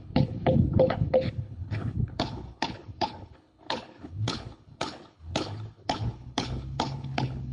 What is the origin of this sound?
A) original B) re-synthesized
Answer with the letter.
B